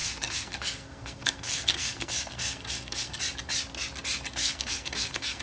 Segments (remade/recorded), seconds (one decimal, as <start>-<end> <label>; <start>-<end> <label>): 0.0-3.2 remade; 3.2-4.4 recorded; 4.4-5.4 remade